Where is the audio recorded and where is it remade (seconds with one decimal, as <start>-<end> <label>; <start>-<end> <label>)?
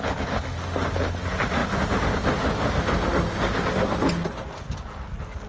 0.0-5.5 recorded